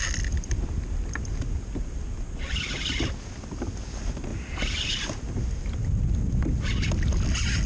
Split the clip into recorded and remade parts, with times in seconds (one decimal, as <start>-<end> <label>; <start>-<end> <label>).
0.0-7.7 recorded